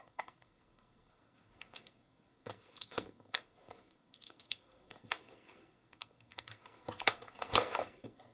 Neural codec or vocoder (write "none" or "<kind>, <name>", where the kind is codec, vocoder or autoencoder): codec, SNAC